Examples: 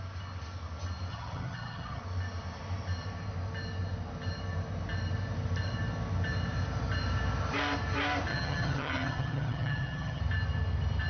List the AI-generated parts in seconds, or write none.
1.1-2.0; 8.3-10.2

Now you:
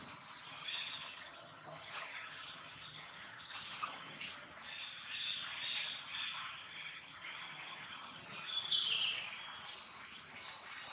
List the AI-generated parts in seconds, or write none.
0.6-4.3; 6.6-8.6